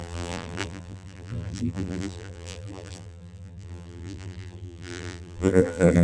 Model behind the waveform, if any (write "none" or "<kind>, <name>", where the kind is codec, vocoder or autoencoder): vocoder, BigVGAN v2